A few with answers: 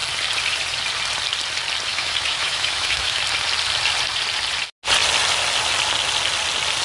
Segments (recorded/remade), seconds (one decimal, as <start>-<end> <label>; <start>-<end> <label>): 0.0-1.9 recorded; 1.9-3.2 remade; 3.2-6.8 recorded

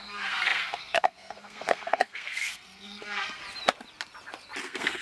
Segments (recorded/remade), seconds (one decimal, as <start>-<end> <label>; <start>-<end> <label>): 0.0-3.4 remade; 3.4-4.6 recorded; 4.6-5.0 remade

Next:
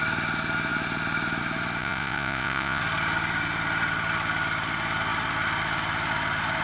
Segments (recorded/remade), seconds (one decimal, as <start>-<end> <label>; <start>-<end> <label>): 0.0-1.8 recorded; 1.8-2.8 remade; 2.8-6.6 recorded

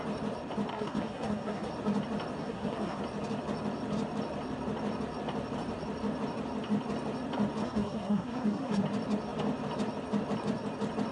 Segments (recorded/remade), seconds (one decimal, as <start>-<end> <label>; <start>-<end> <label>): 0.0-0.7 recorded; 0.7-1.7 remade; 1.7-2.4 recorded; 2.4-3.0 remade; 3.0-7.6 recorded; 7.6-8.8 remade; 8.8-11.1 recorded